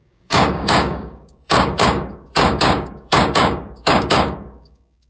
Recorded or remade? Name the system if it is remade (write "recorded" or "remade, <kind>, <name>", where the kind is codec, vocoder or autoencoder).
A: remade, codec, DAC